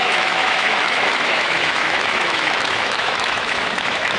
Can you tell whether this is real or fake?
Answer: fake